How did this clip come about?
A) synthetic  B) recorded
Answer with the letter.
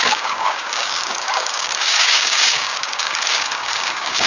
A